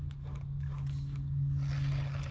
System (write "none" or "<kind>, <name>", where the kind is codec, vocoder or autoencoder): none